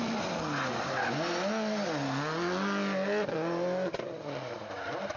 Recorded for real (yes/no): yes